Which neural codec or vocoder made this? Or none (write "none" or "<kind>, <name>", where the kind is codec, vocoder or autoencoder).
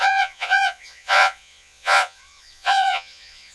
vocoder, Vocos